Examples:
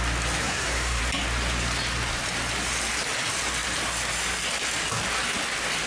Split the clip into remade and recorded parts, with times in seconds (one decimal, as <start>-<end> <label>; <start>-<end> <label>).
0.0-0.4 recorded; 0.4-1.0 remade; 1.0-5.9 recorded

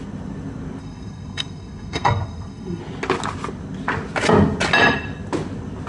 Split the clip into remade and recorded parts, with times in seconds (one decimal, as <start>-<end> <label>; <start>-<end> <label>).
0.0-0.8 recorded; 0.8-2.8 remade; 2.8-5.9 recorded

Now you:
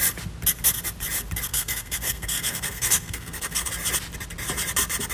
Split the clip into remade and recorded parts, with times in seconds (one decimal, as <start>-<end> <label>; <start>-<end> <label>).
0.0-1.5 recorded; 1.5-3.7 remade; 3.7-5.1 recorded

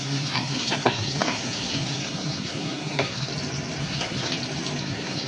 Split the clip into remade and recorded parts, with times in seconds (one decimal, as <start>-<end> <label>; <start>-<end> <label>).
0.0-3.3 remade; 3.3-3.8 recorded; 3.8-4.3 remade; 4.3-4.8 recorded; 4.8-5.3 remade

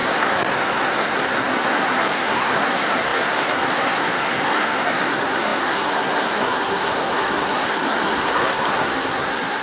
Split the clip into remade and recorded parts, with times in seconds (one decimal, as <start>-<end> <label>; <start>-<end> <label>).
0.0-9.6 remade

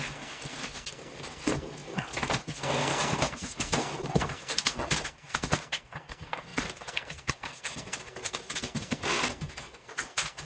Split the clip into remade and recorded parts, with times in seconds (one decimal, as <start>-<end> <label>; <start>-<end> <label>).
0.0-10.5 remade

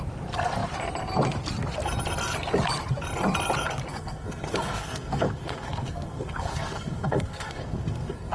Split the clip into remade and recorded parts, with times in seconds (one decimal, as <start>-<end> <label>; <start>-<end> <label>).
0.0-3.9 recorded; 3.9-8.3 remade